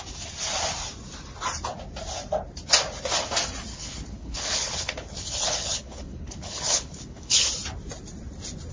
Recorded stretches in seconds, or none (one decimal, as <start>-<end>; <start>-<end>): 0.0-3.7; 7.5-8.7